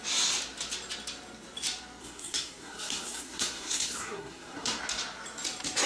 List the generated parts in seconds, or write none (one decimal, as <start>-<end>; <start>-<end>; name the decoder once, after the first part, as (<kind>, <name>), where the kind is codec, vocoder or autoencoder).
2.0-4.8 (codec, SNAC)